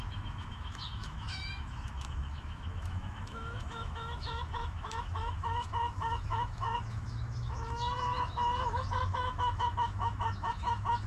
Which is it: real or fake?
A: fake